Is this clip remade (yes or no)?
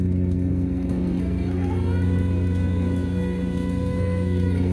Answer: yes